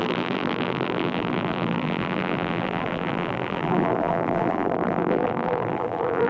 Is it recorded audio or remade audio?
remade